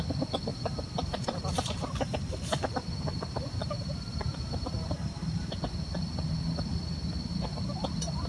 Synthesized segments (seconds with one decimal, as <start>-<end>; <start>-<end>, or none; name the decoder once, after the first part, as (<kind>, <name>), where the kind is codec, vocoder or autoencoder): 0.5-5.5 (vocoder, BigVGAN v2)